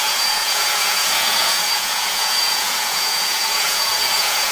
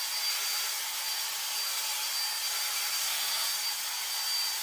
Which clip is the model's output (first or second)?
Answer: first